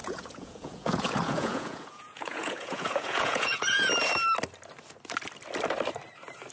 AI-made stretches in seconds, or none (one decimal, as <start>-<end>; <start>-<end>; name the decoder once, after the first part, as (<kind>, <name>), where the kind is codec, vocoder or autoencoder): 0.0-3.9 (vocoder, Vocos)